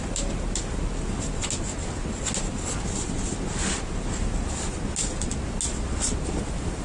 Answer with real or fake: real